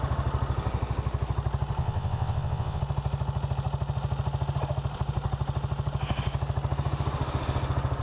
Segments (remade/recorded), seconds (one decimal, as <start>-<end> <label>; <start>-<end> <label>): 0.0-1.8 recorded; 1.8-2.8 remade; 2.8-8.0 recorded